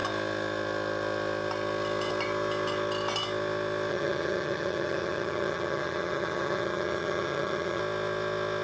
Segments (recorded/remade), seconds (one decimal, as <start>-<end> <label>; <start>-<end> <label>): 0.0-3.9 recorded; 3.9-7.8 remade; 7.8-8.6 recorded